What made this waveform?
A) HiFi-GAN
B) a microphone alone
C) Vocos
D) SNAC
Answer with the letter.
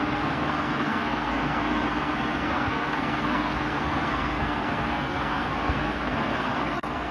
D